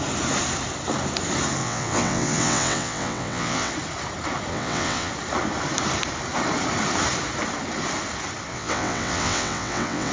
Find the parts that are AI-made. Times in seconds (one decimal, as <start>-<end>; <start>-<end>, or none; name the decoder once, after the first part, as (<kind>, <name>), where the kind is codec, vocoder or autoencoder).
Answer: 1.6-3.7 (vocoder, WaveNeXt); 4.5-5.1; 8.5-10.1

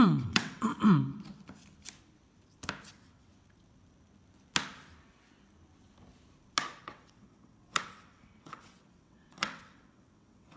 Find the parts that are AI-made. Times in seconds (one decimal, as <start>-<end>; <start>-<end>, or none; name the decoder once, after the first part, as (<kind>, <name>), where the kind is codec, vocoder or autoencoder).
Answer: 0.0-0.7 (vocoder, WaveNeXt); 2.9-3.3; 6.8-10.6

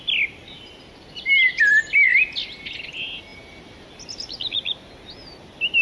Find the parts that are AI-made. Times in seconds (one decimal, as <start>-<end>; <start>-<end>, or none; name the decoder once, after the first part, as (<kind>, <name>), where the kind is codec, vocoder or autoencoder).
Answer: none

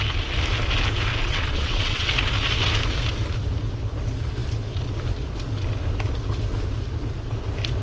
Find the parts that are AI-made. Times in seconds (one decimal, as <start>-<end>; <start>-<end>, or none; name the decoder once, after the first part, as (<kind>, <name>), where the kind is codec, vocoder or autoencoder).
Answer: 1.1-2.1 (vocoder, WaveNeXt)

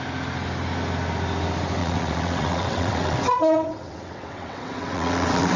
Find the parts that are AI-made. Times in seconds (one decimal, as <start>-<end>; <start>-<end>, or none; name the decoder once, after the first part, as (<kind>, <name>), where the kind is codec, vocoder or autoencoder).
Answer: 1.8-5.6 (vocoder, WaveNeXt)

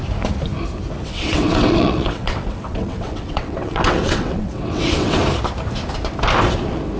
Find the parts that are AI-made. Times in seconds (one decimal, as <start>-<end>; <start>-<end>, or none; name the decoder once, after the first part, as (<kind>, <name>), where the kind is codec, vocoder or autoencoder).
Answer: 1.0-5.2 (vocoder, WaveNeXt)